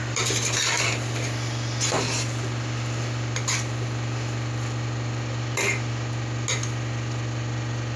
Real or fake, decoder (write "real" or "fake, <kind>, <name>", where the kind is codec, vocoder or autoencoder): real